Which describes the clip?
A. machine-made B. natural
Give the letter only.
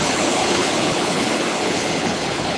A